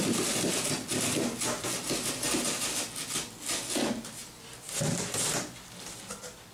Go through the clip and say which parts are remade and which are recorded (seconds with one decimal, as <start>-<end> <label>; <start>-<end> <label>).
0.0-6.5 recorded